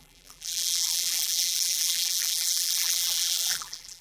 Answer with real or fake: fake